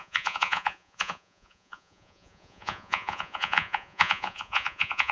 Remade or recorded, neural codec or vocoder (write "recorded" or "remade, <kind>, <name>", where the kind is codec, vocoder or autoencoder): remade, vocoder, Vocos